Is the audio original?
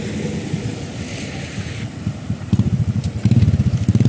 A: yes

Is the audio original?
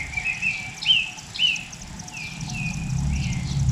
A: yes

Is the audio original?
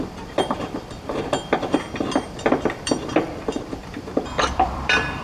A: no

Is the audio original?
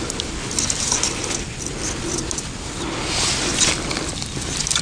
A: yes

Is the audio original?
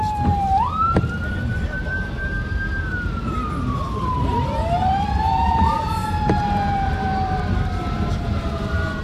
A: no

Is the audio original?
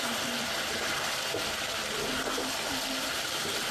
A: no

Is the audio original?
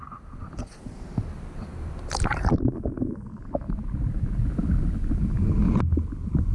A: yes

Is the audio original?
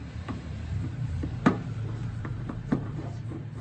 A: no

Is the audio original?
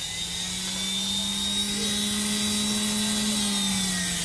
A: yes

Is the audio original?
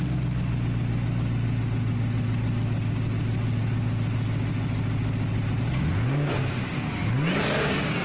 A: yes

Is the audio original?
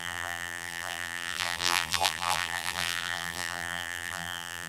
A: no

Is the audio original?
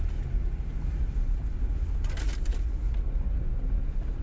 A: yes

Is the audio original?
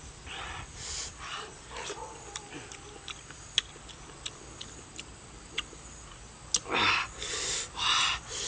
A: yes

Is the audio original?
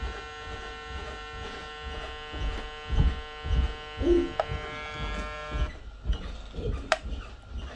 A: yes